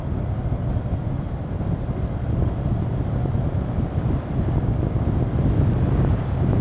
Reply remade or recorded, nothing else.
recorded